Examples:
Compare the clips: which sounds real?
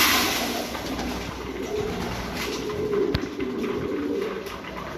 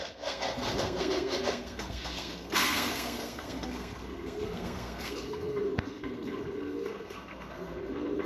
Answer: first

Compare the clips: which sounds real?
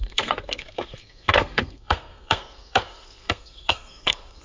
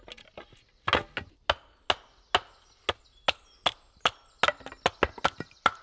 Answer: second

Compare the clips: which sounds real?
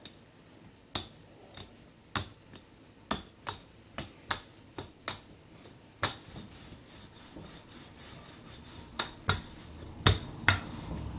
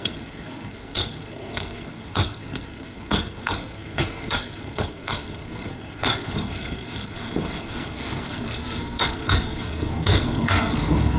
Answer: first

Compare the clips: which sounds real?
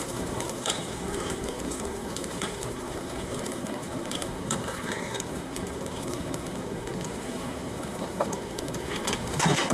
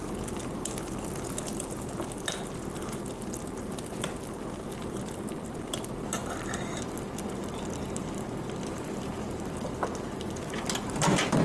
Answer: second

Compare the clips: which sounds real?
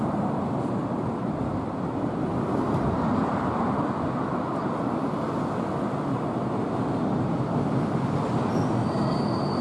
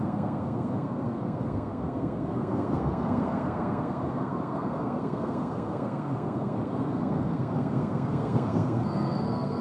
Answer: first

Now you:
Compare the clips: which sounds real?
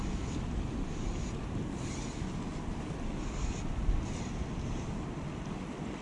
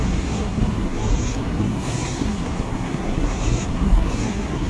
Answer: first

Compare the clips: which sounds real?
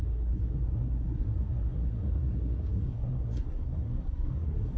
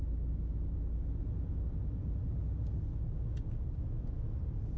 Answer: second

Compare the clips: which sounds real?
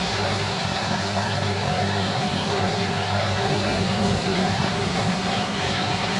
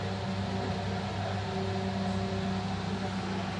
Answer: second